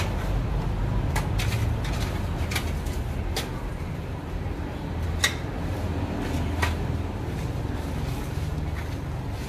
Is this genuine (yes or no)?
yes